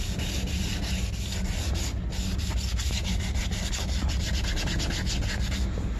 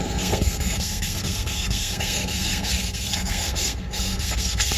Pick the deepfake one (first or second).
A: second